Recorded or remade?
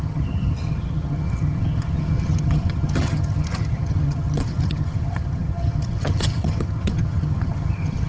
remade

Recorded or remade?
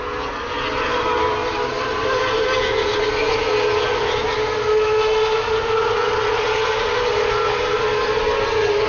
recorded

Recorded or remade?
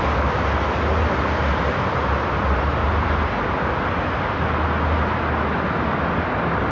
recorded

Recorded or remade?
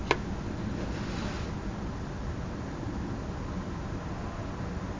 recorded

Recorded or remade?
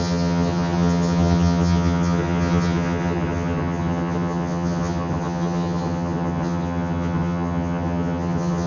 remade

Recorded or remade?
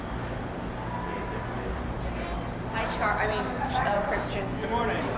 recorded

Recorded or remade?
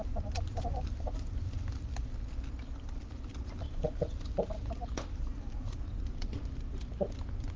recorded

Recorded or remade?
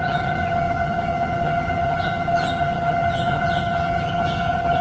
remade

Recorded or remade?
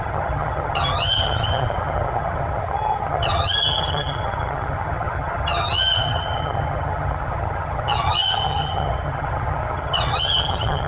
remade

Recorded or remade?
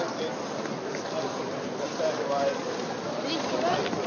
recorded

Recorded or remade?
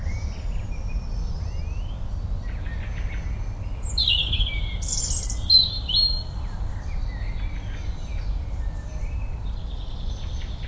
recorded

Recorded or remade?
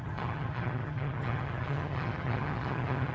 remade